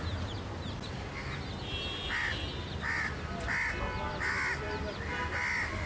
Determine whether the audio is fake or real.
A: real